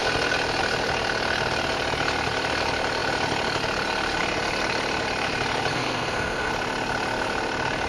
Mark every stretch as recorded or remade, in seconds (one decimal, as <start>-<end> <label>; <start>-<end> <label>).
0.0-5.7 recorded; 5.7-6.5 remade; 6.5-7.9 recorded